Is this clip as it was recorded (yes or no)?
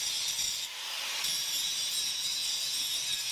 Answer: no